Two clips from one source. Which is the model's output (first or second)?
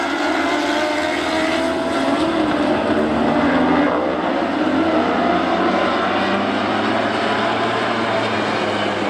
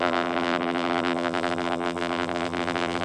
second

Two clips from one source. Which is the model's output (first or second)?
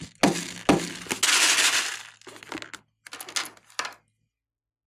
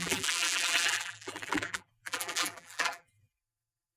second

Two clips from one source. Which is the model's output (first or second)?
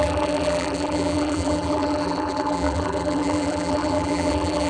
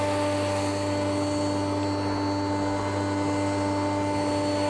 first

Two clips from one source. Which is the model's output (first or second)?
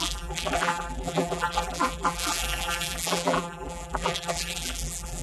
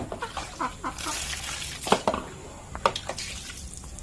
first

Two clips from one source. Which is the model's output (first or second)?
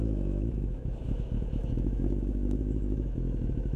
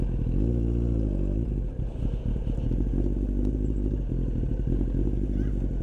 first